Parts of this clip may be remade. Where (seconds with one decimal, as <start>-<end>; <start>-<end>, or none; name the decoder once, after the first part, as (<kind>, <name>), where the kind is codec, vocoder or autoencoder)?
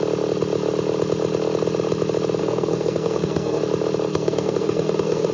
2.4-3.6 (codec, SNAC); 4.1-5.3